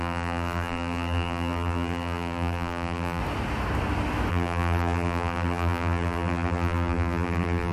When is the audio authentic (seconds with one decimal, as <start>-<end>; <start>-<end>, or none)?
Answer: 3.2-4.3